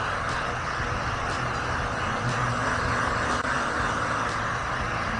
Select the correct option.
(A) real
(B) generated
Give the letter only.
A